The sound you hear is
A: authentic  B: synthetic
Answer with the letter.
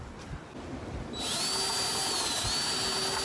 A